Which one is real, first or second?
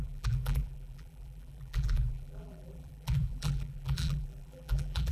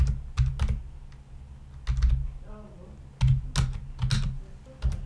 second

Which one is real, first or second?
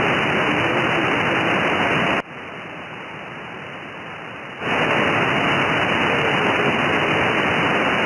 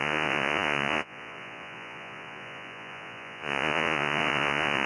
first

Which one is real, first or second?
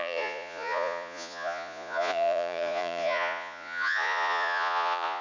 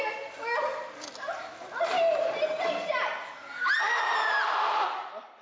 second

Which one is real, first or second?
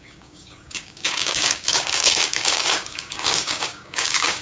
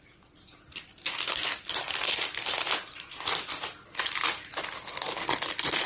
second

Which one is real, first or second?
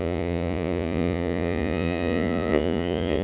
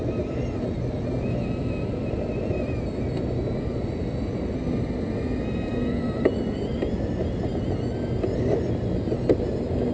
second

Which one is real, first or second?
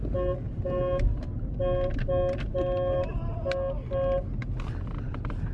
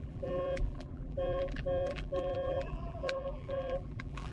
first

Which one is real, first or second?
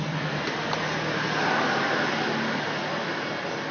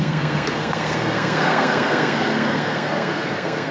first